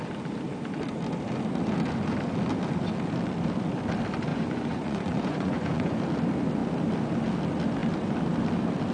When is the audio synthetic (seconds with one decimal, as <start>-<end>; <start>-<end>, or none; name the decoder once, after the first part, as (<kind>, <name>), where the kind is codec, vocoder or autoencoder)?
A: 4.3-6.0 (vocoder, Vocos)